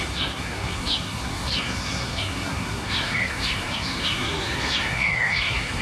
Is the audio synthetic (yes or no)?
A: yes